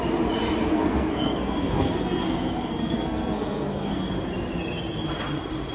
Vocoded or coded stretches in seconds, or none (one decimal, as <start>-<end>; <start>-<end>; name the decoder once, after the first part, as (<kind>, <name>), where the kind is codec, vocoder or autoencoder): 0.7-4.1 (codec, SNAC)